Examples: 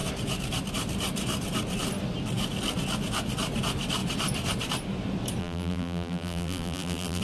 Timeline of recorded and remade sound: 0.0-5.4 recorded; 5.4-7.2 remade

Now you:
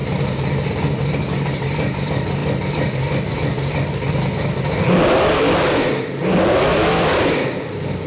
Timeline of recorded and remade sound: 0.0-6.7 recorded; 6.7-7.3 remade; 7.3-8.1 recorded

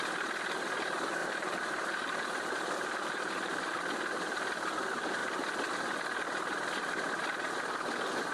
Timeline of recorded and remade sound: 0.0-1.2 recorded; 1.2-3.8 remade; 3.8-8.3 recorded